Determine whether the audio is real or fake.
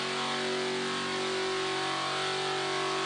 real